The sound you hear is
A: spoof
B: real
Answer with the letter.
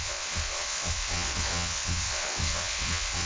A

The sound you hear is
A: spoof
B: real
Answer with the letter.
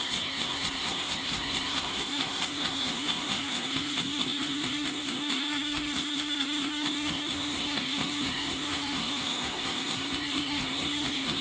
A